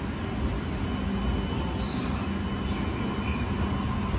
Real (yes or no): yes